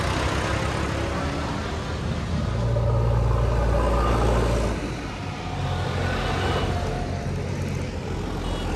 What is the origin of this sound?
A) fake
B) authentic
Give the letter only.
B